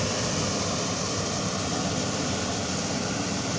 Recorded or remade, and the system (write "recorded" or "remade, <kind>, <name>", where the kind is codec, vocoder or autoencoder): recorded